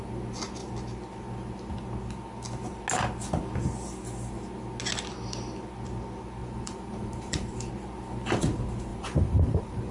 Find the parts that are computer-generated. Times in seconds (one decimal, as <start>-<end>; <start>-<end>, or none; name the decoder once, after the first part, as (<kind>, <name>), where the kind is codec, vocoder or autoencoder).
6.4-7.7 (vocoder, BigVGAN v2); 8.9-9.9